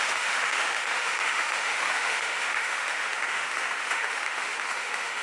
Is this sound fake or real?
fake